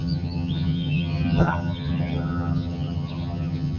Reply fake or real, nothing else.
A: fake